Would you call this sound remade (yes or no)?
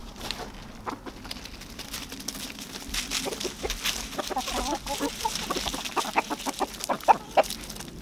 no